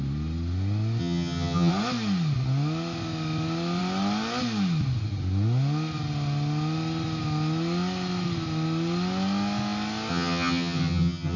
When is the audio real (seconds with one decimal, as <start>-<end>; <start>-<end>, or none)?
0.0-1.0; 1.7-10.1